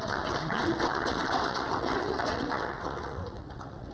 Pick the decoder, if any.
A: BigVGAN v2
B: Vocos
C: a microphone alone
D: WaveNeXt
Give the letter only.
D